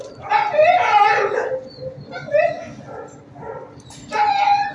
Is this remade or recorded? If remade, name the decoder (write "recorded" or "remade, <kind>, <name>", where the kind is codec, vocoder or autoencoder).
recorded